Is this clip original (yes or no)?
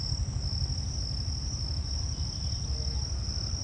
yes